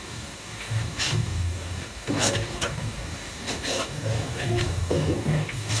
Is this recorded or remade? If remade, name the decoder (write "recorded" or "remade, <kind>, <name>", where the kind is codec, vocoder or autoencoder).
remade, codec, DAC